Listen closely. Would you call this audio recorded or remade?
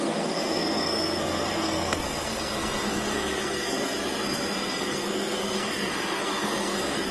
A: remade